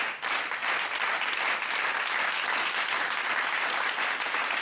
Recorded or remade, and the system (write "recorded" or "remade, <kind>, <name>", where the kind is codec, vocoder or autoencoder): recorded